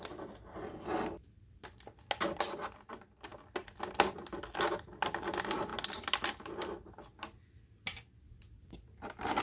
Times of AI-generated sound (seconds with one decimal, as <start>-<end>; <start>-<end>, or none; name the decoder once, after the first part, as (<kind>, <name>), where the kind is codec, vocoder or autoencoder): none